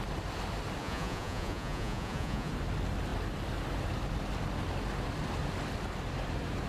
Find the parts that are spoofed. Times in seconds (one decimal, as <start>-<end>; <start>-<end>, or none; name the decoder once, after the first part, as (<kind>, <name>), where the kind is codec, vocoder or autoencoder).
0.8-2.5 (vocoder, Vocos)